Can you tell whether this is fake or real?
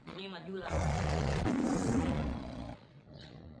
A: fake